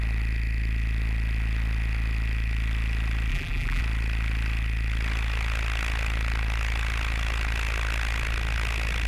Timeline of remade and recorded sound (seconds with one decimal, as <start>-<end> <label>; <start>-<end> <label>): 0.0-3.3 recorded; 3.3-3.8 remade; 3.8-9.1 recorded